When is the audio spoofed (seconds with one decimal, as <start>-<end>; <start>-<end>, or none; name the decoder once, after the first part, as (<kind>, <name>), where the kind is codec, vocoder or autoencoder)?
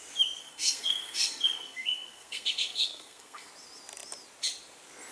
0.4-3.5 (codec, SNAC)